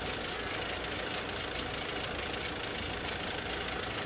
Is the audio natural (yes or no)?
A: yes